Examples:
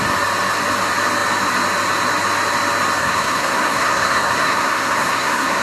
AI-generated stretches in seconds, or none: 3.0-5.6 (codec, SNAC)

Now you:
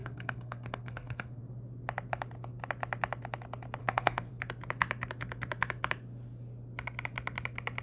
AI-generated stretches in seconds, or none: 0.0-1.4 (codec, SNAC); 3.8-4.3

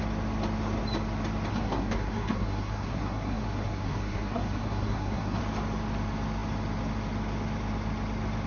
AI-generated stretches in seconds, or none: 1.5-5.4 (codec, SNAC)

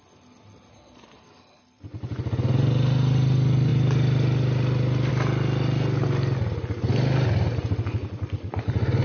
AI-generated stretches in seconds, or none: none

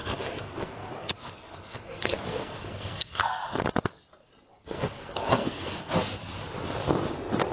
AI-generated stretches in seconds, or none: 0.0-3.6 (codec, SNAC); 4.5-5.9